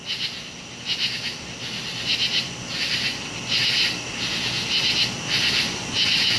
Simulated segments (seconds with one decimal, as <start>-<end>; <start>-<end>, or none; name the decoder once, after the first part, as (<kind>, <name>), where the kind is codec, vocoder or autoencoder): none